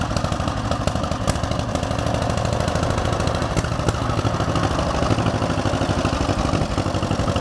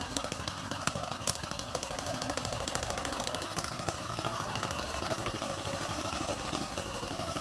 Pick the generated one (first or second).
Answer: second